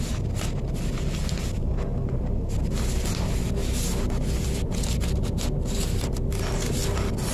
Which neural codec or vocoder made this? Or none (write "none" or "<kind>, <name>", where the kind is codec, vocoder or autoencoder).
none